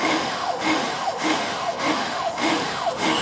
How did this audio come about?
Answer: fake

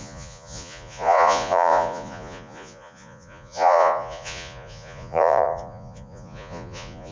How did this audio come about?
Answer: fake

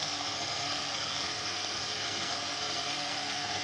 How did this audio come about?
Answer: fake